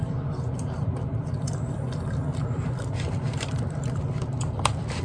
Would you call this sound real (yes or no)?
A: no